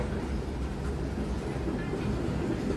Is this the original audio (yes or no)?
yes